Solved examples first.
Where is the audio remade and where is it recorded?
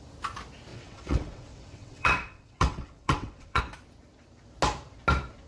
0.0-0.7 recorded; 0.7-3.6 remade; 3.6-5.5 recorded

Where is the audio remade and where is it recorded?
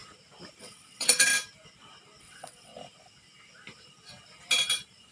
0.0-0.6 recorded; 0.6-1.3 remade; 1.3-2.2 recorded; 2.2-2.7 remade; 2.7-5.1 recorded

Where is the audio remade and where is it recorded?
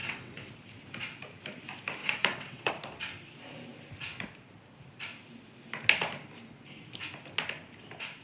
0.0-0.5 remade; 0.5-2.0 recorded; 2.0-2.7 remade; 2.7-8.2 recorded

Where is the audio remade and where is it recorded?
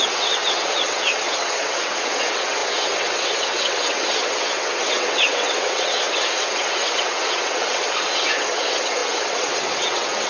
0.0-10.3 remade